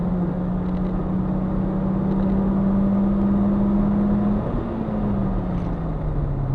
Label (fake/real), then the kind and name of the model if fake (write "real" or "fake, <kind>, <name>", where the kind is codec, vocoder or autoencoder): real